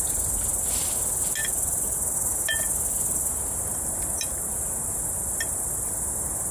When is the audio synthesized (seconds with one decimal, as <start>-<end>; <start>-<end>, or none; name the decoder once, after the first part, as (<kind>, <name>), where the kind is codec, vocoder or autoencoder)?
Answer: 1.4-3.6 (vocoder, BigVGAN v2)